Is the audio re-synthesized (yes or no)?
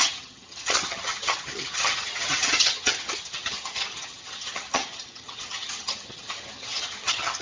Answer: yes